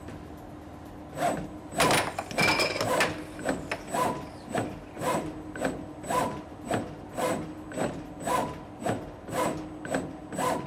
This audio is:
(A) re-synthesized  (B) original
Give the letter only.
B